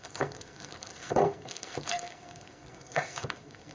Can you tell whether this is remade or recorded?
remade